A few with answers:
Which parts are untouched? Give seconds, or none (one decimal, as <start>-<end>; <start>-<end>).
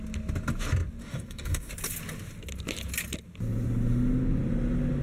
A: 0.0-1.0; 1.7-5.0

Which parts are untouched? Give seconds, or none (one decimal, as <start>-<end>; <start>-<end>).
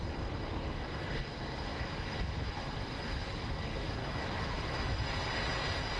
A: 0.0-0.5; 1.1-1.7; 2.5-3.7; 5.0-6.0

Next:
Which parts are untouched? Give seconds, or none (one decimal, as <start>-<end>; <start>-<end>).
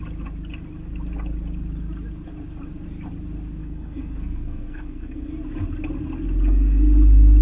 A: 0.0-3.6; 5.3-7.4